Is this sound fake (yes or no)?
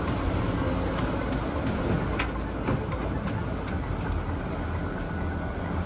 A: no